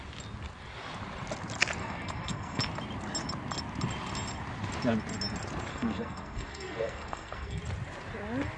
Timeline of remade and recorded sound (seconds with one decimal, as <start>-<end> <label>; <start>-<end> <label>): 0.0-1.8 recorded; 1.8-2.6 remade; 2.6-5.7 recorded; 5.7-7.6 remade; 7.6-8.6 recorded